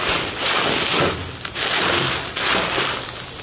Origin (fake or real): real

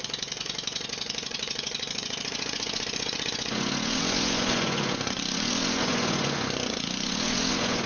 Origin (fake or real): fake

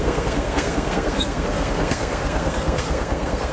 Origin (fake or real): fake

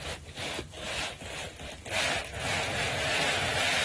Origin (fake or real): real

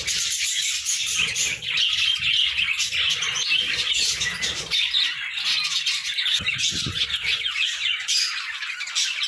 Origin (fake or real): real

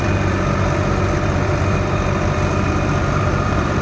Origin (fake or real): fake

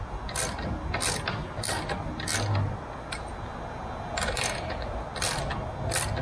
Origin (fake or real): real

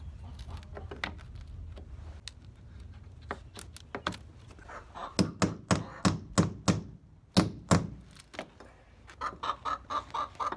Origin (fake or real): real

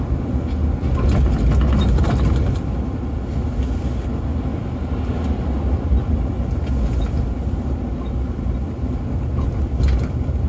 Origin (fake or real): real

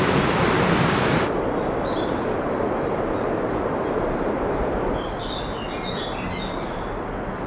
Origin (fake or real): real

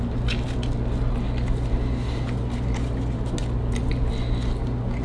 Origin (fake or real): real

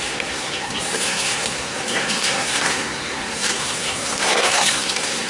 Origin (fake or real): fake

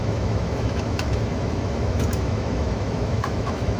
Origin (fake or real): fake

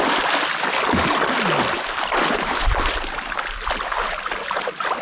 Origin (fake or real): real